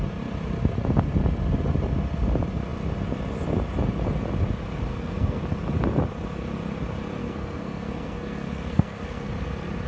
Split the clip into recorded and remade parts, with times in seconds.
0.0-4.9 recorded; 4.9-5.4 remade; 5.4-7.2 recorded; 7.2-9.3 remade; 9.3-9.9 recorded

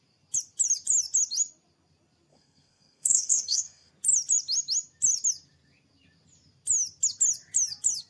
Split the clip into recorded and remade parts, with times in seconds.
0.0-2.3 recorded; 2.3-3.9 remade; 3.9-8.1 recorded